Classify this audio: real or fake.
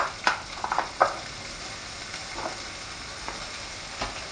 real